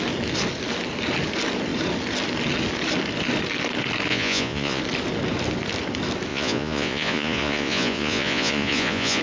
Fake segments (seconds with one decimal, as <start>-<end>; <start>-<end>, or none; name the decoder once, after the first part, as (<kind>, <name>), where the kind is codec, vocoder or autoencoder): 4.1-4.8 (vocoder, Vocos); 6.3-9.2